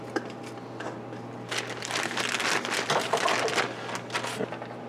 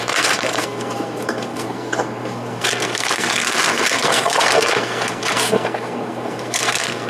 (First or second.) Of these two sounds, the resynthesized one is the second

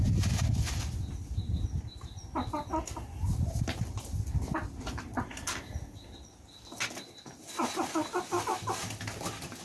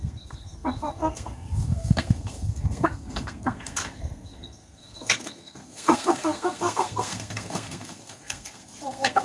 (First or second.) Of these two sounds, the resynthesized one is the second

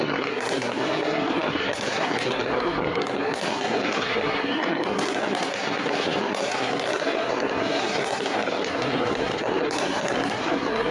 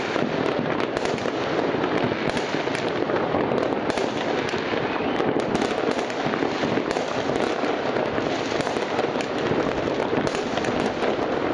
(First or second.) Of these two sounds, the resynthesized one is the first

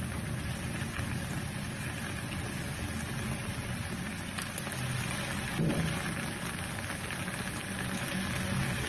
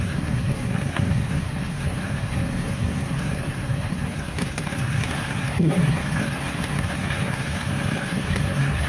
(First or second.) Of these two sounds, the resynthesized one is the second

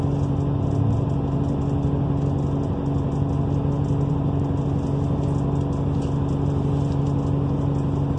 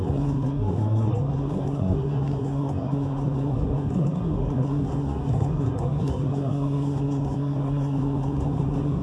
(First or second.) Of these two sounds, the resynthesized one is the second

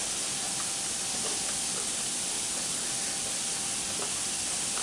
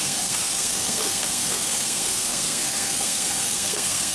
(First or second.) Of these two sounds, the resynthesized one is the second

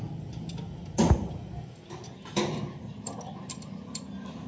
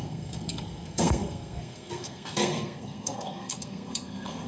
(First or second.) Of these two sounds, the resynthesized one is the second